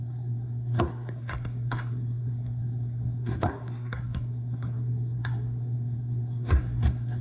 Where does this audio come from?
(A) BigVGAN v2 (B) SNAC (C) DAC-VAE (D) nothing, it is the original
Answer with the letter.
B